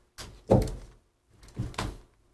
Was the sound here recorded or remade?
recorded